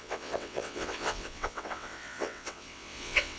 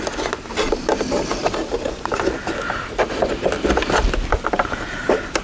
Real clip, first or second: second